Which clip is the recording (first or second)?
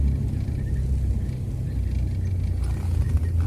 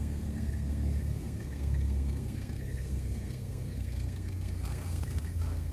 first